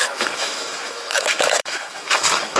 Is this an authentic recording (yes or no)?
no